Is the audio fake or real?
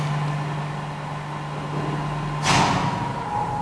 real